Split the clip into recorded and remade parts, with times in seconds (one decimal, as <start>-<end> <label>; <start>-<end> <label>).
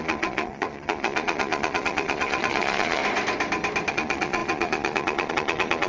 0.0-3.0 remade; 3.0-3.9 recorded; 3.9-5.9 remade